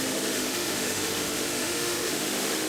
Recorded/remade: remade